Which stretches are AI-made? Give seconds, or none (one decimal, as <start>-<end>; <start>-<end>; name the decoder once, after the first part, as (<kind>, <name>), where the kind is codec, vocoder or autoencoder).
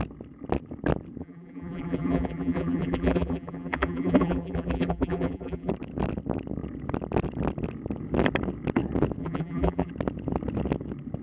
1.2-5.7 (vocoder, BigVGAN v2); 9.2-9.9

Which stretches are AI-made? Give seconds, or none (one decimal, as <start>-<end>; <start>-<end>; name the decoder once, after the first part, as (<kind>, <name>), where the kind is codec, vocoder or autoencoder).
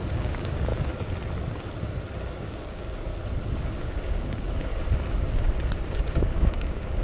0.0-0.7 (codec, DAC); 2.2-3.1; 3.6-4.7; 6.2-7.0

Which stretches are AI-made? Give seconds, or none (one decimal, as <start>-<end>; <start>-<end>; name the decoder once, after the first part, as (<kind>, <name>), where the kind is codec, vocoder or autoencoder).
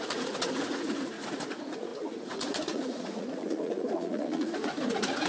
0.0-5.3 (vocoder, Vocos)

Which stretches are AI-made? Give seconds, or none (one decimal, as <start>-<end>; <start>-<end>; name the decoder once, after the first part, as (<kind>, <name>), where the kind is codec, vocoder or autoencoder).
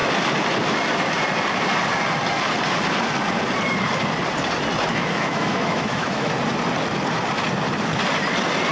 4.9-6.3 (autoencoder, DAC-VAE)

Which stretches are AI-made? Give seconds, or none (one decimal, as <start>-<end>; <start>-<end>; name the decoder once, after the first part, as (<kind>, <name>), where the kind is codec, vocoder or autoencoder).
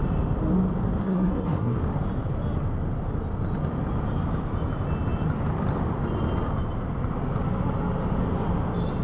1.0-1.8 (codec, SNAC)